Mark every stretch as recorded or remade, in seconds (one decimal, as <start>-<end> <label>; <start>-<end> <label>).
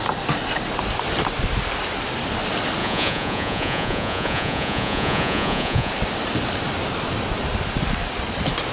0.0-2.8 recorded; 2.8-5.9 remade; 5.9-8.7 recorded